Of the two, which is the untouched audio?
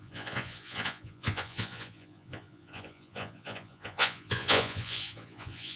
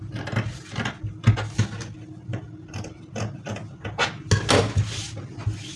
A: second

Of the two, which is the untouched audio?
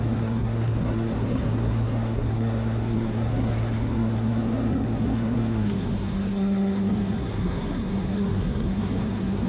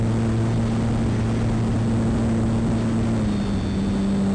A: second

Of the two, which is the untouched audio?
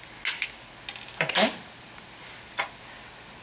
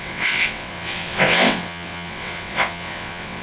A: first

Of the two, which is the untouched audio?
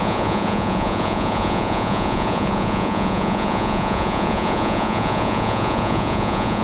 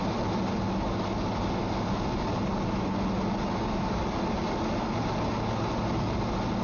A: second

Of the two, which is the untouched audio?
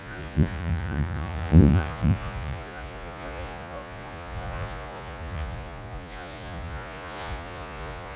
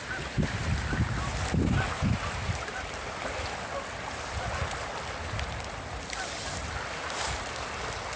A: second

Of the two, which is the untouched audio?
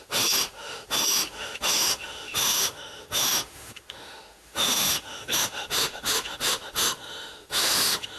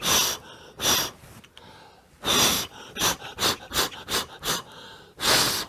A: second